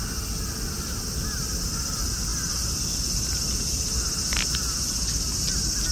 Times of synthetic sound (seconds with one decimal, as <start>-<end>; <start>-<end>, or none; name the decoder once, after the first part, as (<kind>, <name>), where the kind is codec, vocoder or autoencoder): none

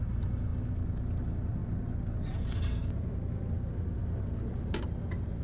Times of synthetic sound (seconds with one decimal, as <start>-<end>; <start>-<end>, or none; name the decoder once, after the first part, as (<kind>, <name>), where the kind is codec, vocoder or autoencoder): none

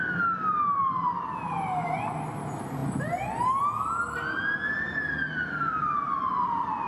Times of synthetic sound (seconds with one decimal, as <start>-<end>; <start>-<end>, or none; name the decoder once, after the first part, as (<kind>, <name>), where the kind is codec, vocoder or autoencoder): none

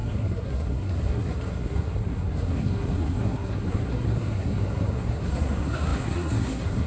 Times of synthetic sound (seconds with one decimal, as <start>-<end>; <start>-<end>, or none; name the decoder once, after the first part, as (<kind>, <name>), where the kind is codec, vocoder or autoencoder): 0.0-6.9 (codec, SNAC)